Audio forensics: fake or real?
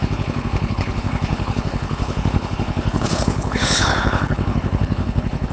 fake